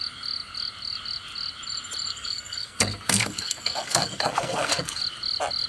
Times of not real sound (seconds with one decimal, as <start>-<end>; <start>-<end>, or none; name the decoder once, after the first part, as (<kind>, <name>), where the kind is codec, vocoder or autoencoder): 2.1-5.0 (codec, SNAC)